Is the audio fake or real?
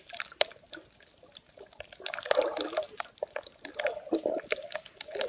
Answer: real